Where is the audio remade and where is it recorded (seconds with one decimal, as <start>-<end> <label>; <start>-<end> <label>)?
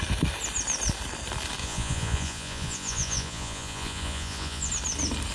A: 0.0-1.6 recorded; 1.6-4.7 remade; 4.7-5.3 recorded